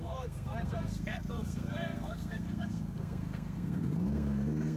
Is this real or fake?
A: fake